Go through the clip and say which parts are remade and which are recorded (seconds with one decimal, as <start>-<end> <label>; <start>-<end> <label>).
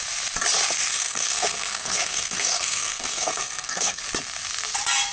0.0-0.9 recorded; 0.9-4.0 remade; 4.0-5.1 recorded